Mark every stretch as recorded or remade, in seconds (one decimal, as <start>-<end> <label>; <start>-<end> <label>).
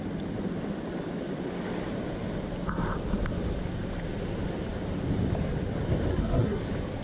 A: 0.0-6.1 recorded; 6.1-6.6 remade; 6.6-7.0 recorded